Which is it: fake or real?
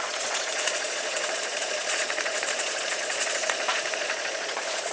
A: fake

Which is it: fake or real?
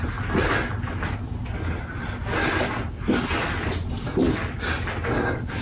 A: real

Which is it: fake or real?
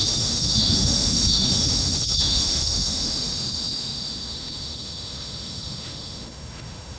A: fake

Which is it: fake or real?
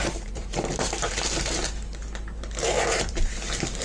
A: fake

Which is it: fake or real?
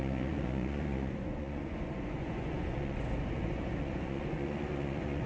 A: fake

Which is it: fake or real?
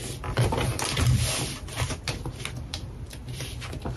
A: real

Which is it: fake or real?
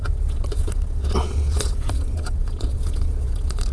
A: fake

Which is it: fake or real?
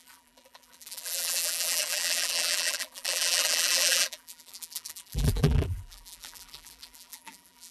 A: fake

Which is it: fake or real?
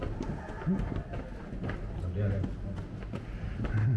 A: real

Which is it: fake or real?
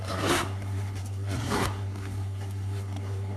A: fake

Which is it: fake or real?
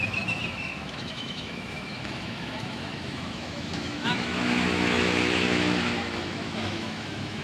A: fake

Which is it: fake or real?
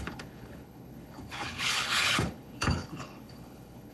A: fake